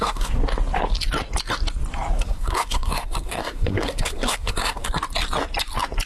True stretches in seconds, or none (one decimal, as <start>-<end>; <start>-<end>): 0.4-2.2; 5.0-6.1

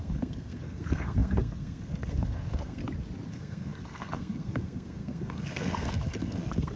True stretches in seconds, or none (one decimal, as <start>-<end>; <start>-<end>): 2.8-3.3

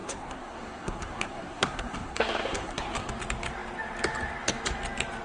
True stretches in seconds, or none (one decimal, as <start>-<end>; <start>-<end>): 3.1-5.2

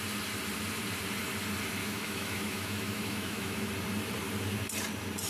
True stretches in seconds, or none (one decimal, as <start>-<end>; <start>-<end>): 0.0-1.8; 3.7-5.3

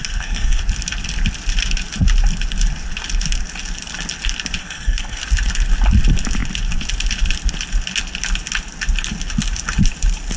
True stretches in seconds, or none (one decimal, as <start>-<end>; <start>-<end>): 0.6-4.6; 5.2-10.4

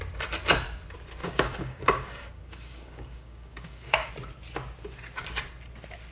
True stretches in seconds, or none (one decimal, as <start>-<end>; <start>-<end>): 0.0-1.2; 4.1-6.1

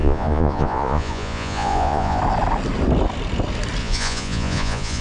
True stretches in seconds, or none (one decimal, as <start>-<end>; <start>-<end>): 2.2-3.8

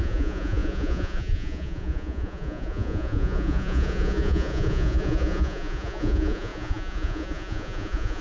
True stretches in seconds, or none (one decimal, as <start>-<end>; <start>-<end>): none